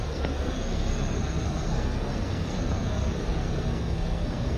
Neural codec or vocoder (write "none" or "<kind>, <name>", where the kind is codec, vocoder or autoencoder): codec, SNAC